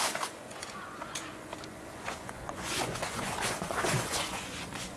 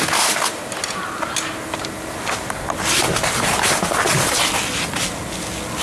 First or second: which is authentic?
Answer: second